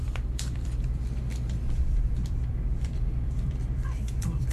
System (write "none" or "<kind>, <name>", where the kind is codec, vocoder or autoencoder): vocoder, BigVGAN v2